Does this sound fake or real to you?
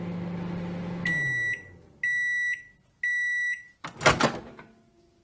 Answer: real